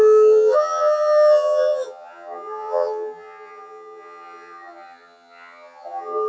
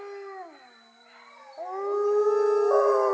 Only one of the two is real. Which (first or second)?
second